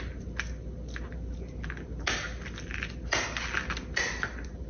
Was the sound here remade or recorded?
recorded